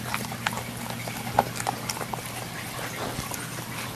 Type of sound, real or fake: fake